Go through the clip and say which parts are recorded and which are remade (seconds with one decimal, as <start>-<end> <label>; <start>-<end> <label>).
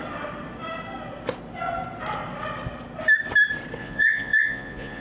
0.0-3.8 recorded; 3.8-5.0 remade